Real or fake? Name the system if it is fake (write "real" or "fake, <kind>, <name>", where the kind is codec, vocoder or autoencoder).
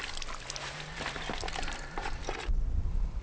real